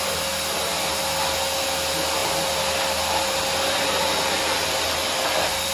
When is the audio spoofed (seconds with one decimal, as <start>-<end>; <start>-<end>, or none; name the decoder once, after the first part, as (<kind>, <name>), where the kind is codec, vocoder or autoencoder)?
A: 2.2-5.7 (vocoder, BigVGAN v2)